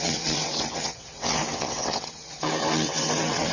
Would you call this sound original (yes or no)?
no